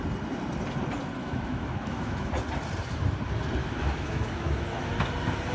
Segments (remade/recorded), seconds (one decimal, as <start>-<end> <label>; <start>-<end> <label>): 0.0-1.2 recorded; 1.2-2.3 remade; 2.3-3.6 recorded; 3.6-4.9 remade; 4.9-5.5 recorded